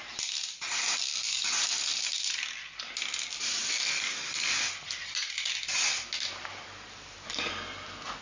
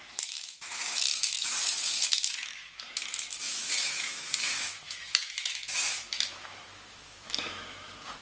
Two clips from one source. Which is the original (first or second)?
first